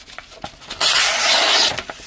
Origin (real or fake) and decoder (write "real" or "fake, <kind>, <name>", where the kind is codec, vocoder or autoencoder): real